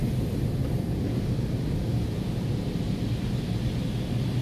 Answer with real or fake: real